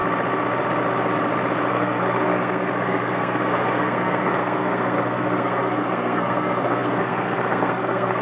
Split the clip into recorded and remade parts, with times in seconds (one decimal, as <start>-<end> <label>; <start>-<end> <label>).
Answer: 0.0-1.7 recorded; 1.7-8.2 remade